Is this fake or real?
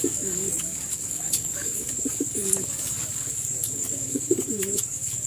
fake